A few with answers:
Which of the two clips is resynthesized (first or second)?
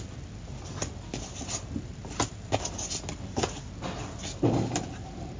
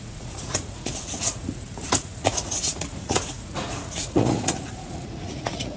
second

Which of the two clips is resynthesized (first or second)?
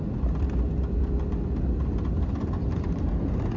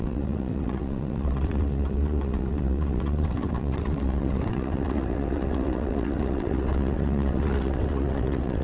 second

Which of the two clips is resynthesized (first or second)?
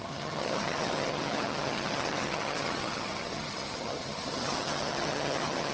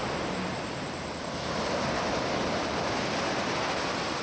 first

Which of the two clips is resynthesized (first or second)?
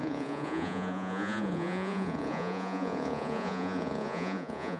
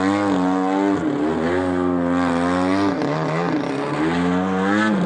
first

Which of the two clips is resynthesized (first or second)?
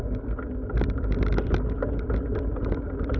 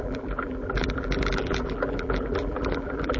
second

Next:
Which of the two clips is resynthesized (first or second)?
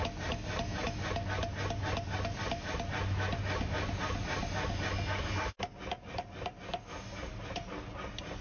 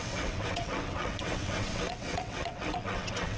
second